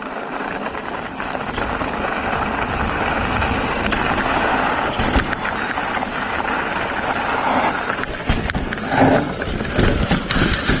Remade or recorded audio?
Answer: recorded